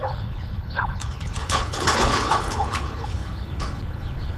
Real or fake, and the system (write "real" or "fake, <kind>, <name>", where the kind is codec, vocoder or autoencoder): fake, codec, HILCodec